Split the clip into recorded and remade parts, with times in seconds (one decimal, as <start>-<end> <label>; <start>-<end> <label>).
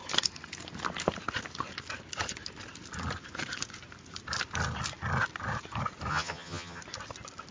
0.0-6.1 recorded; 6.1-6.8 remade; 6.8-7.5 recorded